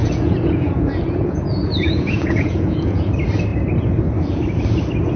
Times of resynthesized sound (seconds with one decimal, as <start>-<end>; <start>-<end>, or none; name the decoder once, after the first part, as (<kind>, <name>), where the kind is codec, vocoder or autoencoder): 0.0-3.1 (vocoder, Vocos)